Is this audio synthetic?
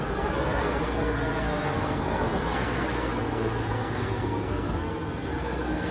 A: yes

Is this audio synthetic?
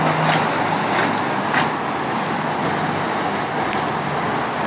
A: no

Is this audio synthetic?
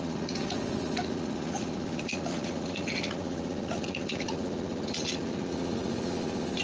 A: yes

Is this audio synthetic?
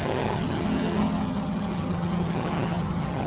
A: yes